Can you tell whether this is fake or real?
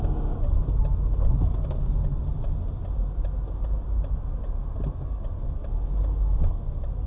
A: real